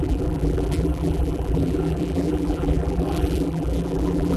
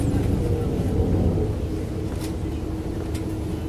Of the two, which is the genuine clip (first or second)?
second